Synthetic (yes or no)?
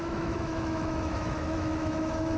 yes